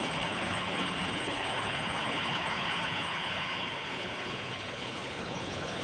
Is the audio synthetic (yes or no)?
yes